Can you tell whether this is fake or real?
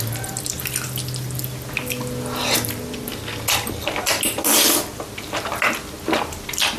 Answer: real